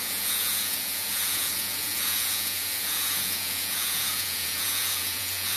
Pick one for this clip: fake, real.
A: fake